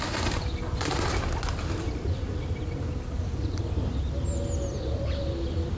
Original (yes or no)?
yes